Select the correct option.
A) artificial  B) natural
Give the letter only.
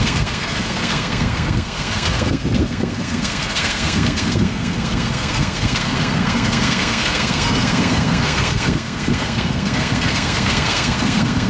A